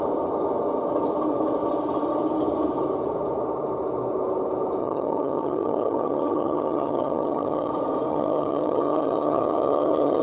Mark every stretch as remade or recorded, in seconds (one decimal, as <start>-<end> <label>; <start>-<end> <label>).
0.0-4.8 recorded; 4.8-7.7 remade; 7.7-8.1 recorded; 8.1-10.2 remade